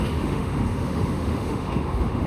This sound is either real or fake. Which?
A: fake